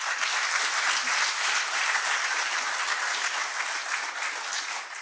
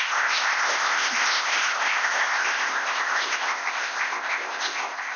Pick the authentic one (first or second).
first